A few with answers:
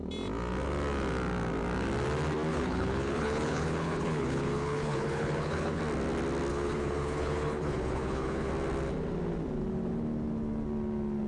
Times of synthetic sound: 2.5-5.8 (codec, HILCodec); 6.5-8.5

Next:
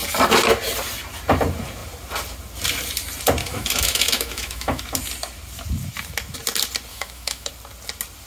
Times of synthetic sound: 3.4-4.8 (autoencoder, DAC-VAE); 6.9-7.5

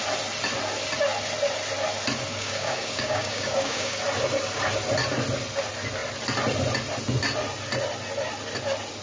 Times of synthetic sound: 2.3-4.0 (codec, DAC)

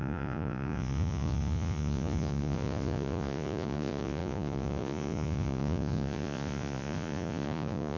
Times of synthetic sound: 0.0-8.0 (vocoder, Vocos)

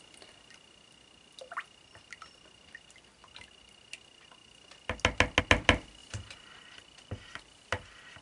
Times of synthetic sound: 6.0-6.5 (vocoder, BigVGAN v2)